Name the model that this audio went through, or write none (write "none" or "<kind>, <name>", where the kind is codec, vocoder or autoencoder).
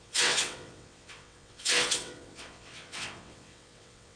vocoder, WaveNeXt